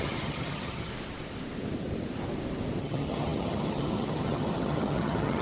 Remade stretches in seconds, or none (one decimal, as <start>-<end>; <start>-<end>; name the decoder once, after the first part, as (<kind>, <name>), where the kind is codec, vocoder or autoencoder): 0.0-0.9 (vocoder, HiFi-GAN); 2.8-5.4

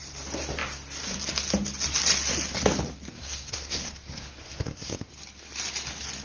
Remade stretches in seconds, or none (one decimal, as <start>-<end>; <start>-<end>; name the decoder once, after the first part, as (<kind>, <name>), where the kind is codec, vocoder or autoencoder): 3.1-5.1 (codec, SNAC)

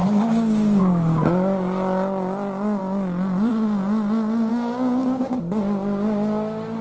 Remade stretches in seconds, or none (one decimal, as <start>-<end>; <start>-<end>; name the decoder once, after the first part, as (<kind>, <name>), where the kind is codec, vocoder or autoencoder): 0.0-0.8 (codec, DAC); 4.5-5.4

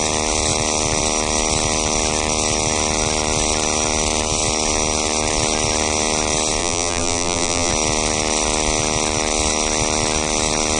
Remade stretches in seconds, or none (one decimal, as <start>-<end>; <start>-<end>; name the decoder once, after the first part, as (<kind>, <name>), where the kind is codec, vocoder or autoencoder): 6.6-7.7 (vocoder, BigVGAN v2)

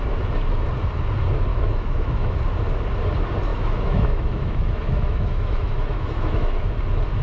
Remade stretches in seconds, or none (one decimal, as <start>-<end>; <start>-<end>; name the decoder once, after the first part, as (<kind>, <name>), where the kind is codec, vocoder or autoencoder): 1.5-2.4 (autoencoder, DAC-VAE); 3.5-6.7

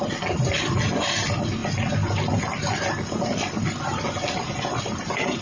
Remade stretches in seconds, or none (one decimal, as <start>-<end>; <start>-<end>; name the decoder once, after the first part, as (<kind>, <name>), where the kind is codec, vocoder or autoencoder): none

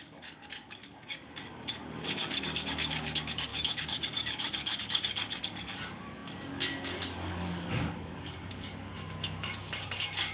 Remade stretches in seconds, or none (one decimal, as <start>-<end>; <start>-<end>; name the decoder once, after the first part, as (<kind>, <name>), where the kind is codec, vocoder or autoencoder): 0.0-10.3 (codec, DAC)

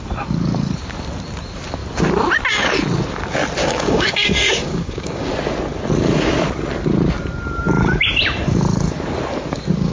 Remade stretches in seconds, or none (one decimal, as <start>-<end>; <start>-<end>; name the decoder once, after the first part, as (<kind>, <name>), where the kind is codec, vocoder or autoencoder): 3.6-5.3 (codec, DAC)